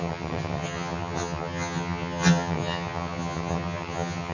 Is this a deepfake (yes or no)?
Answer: yes